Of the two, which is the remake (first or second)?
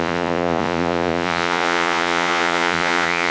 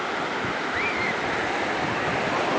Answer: first